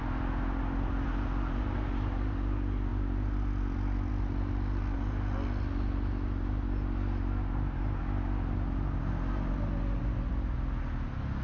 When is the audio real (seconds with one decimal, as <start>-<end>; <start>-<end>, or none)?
0.0-11.4